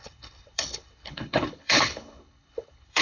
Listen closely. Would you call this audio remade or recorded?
remade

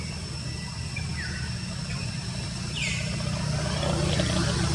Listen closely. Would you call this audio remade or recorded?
recorded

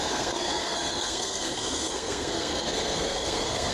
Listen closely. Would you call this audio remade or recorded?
remade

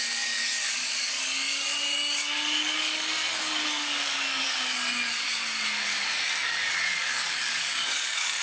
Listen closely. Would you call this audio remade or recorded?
remade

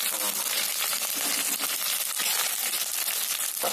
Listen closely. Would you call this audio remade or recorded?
recorded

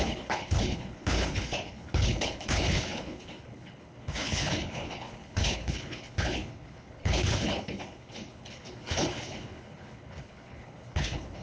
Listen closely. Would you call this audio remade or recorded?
remade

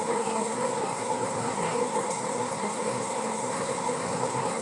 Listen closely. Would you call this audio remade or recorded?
remade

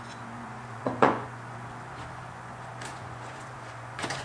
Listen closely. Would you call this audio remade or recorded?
remade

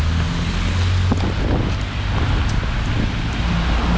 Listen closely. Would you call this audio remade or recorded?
recorded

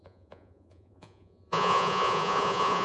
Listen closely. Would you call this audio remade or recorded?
remade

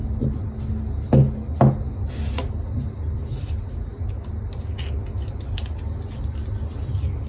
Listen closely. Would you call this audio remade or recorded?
recorded